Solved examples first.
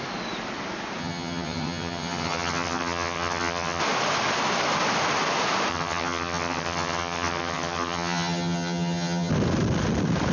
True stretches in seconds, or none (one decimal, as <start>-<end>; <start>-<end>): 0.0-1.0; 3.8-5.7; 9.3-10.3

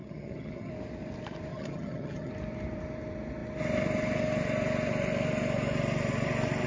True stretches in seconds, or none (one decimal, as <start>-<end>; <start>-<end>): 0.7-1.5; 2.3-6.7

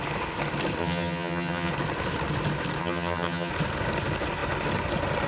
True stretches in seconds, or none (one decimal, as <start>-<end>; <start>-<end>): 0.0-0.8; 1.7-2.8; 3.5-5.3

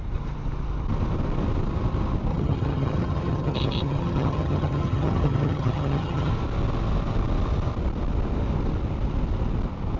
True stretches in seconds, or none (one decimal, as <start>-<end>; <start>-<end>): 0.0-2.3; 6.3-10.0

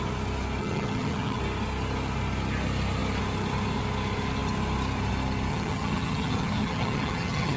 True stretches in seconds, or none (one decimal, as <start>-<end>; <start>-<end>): 0.0-0.6; 1.4-5.5